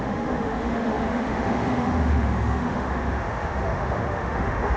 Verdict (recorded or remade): remade